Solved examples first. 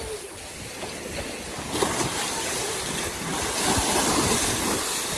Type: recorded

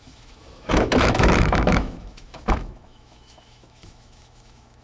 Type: remade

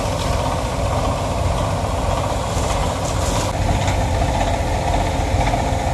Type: recorded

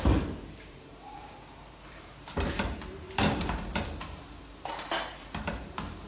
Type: remade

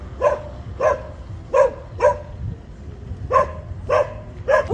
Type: recorded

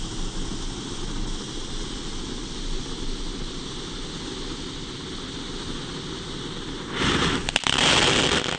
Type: recorded